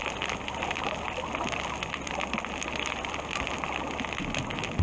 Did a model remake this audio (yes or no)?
no